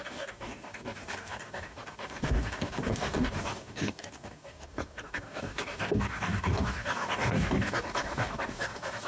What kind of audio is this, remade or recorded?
remade